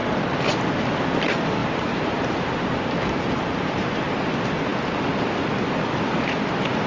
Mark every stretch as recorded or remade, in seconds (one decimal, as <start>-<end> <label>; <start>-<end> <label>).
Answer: 0.0-1.6 recorded; 1.6-4.2 remade; 4.2-6.9 recorded